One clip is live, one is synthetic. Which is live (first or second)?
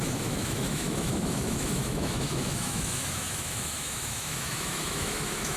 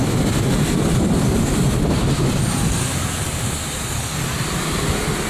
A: second